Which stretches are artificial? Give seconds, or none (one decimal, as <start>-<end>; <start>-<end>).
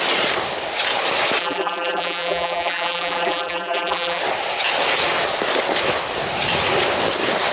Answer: 1.4-4.2